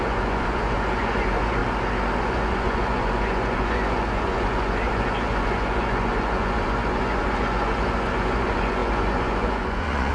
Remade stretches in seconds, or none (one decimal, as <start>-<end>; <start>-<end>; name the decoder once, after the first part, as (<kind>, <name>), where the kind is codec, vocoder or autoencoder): 0.0-1.6 (vocoder, Vocos); 2.2-10.1